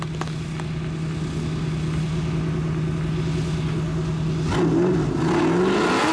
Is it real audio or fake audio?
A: real